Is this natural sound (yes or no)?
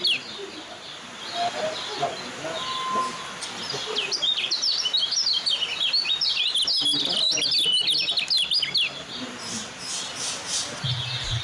yes